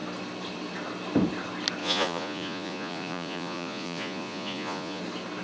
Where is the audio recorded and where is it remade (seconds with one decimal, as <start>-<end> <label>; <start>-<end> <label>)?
0.0-1.8 recorded; 1.8-5.0 remade; 5.0-5.4 recorded